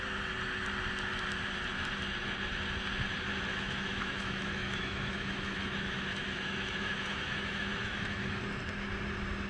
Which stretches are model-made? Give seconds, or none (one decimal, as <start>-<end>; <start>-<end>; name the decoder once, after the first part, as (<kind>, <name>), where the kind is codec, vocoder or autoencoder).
3.5-8.4 (autoencoder, DAC-VAE)